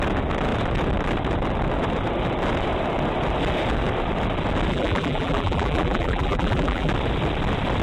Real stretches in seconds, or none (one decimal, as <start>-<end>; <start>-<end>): 0.0-4.7; 6.9-7.8